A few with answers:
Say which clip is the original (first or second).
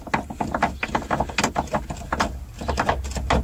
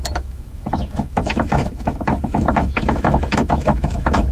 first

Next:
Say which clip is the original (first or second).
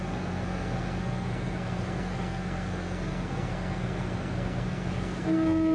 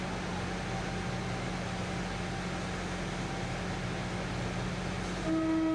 second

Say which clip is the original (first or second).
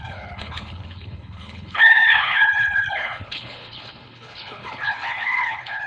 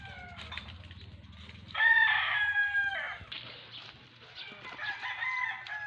second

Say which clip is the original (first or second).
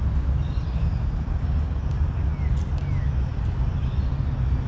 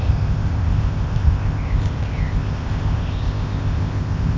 first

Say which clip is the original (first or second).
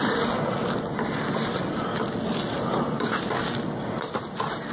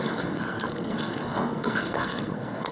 first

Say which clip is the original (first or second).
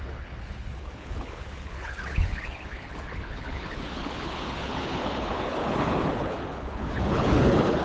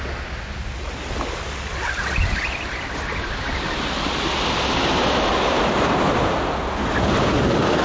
second